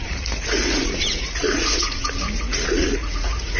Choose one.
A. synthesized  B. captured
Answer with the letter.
A